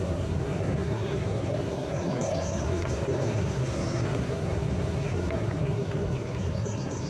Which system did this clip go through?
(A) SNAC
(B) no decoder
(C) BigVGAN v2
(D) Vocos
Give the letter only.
A